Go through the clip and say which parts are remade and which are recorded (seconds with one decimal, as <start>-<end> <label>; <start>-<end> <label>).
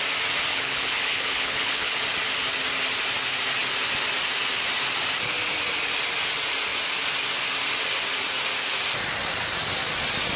0.0-0.5 recorded; 0.5-1.9 remade; 1.9-10.4 recorded